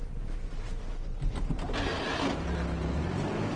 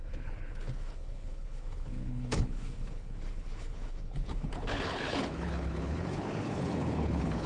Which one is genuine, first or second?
first